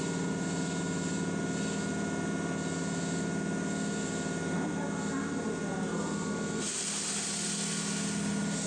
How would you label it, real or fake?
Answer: real